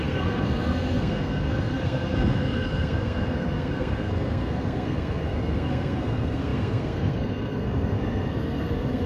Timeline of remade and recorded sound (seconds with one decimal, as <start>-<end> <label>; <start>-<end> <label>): 0.0-9.1 remade